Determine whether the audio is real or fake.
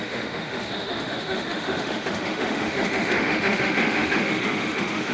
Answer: fake